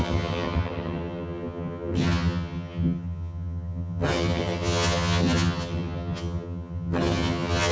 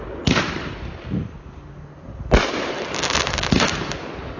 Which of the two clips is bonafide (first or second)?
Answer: second